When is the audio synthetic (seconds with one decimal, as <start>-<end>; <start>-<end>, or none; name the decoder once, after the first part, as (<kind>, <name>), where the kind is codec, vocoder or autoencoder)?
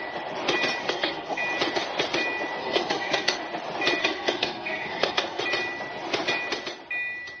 0.8-1.4 (codec, SNAC); 2.6-3.4; 4.0-5.4